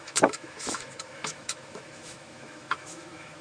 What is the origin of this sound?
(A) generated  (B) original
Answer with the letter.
A